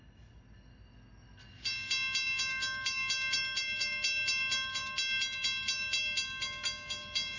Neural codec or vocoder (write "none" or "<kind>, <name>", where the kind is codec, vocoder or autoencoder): none